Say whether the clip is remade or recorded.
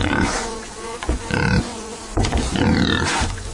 remade